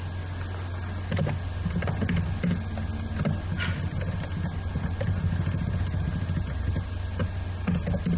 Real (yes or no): yes